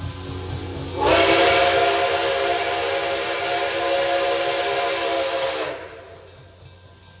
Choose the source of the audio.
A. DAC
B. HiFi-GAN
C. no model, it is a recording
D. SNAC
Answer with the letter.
C